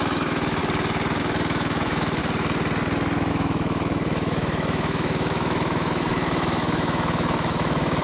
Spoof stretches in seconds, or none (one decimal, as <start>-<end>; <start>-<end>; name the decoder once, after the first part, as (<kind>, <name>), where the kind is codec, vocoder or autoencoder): 0.0-0.6 (autoencoder, DAC-VAE); 1.2-2.2; 3.3-8.0